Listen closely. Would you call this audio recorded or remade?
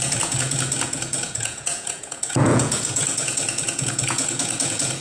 remade